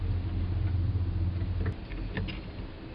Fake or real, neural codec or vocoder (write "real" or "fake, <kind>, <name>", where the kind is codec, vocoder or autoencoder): real